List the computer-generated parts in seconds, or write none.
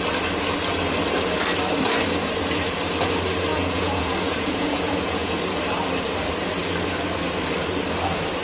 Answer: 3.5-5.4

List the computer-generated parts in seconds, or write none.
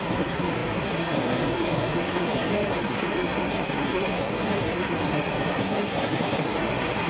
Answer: 0.0-7.1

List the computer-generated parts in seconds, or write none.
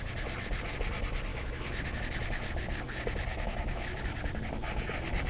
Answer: 1.3-2.0; 3.3-4.0